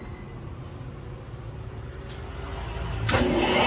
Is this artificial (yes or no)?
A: no